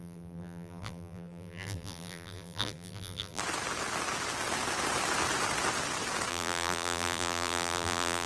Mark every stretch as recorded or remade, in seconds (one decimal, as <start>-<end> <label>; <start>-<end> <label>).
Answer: 0.0-3.4 remade; 3.4-6.3 recorded; 6.3-8.3 remade